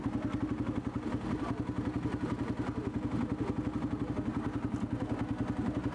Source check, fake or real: real